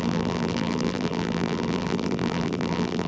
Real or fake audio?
fake